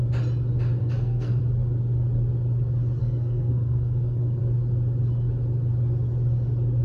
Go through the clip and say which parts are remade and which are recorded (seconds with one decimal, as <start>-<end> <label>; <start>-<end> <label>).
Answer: 0.0-0.8 recorded; 0.8-1.4 remade; 1.4-3.0 recorded; 3.0-4.4 remade; 4.4-6.8 recorded